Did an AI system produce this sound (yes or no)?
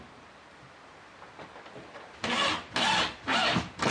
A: no